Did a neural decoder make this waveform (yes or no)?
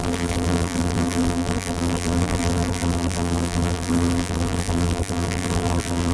yes